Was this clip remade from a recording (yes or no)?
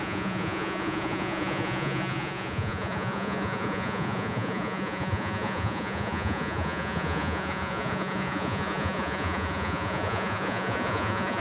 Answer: yes